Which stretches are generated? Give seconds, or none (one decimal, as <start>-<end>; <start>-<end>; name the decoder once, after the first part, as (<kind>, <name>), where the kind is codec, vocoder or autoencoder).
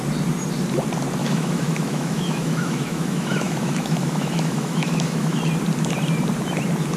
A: 1.2-5.4 (autoencoder, DAC-VAE)